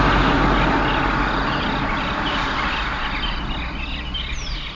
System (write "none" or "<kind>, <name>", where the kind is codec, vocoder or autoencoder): none